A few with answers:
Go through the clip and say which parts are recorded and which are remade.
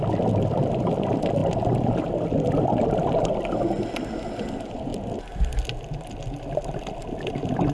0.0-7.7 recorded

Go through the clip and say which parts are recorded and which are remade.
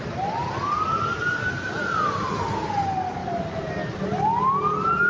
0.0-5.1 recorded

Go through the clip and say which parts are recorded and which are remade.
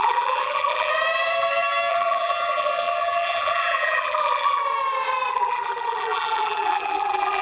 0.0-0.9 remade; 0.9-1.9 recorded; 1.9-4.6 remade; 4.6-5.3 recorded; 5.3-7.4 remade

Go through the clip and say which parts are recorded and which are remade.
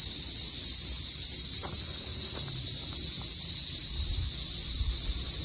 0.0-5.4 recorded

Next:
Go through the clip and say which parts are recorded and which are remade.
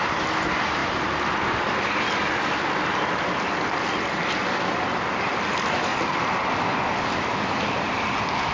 0.0-5.9 recorded; 5.9-6.5 remade; 6.5-8.5 recorded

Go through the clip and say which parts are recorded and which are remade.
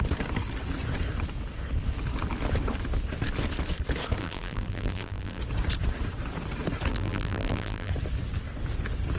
0.0-4.2 recorded; 4.2-5.4 remade; 5.4-6.9 recorded; 6.9-7.9 remade; 7.9-9.2 recorded